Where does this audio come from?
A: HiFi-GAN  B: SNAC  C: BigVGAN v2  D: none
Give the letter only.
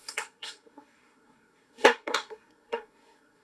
B